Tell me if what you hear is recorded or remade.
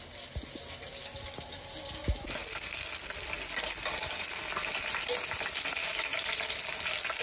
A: recorded